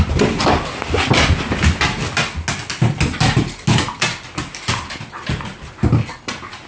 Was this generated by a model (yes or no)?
no